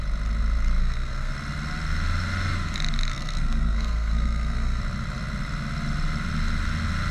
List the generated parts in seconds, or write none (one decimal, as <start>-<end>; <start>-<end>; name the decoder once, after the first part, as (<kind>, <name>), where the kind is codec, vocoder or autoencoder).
0.8-1.3 (codec, SNAC); 3.1-4.8